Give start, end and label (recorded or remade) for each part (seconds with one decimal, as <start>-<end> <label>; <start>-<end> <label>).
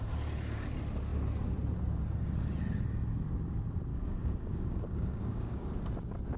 0.0-3.9 recorded; 3.9-5.8 remade; 5.8-6.4 recorded